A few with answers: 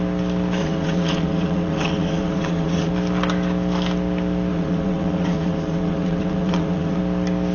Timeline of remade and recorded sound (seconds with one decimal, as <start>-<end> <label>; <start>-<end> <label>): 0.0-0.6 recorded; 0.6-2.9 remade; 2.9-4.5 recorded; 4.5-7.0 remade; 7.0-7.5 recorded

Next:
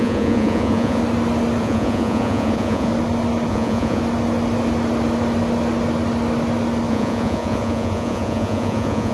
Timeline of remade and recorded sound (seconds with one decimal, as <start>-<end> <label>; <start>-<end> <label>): 0.0-1.0 remade; 1.0-1.6 recorded; 1.6-2.9 remade; 2.9-3.5 recorded; 3.5-4.0 remade; 4.0-6.9 recorded; 6.9-9.1 remade

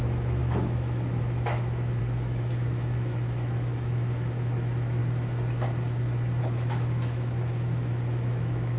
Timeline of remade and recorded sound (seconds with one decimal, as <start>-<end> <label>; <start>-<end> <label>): 0.0-5.0 remade; 5.0-6.4 recorded; 6.4-8.8 remade

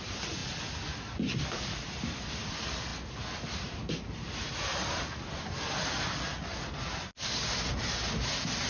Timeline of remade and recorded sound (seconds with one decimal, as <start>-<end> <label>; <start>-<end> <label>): 0.0-8.7 recorded

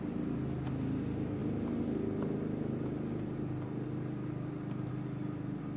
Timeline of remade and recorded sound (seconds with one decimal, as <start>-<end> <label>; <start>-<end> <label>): 0.0-5.8 recorded

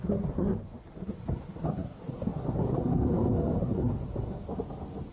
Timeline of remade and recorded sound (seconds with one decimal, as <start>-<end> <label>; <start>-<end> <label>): 0.0-4.5 remade; 4.5-5.1 recorded